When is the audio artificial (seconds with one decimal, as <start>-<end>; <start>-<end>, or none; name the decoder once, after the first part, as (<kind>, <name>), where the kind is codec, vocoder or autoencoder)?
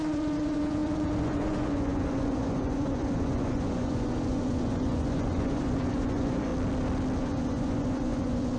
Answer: 0.0-6.5 (vocoder, Vocos); 7.2-8.6